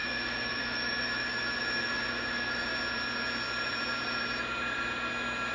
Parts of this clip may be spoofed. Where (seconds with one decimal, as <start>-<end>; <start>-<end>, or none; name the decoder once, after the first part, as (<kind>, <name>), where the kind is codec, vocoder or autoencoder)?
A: 0.0-2.8 (autoencoder, DAC-VAE)